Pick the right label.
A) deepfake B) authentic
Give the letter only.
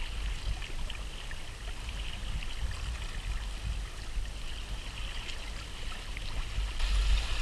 B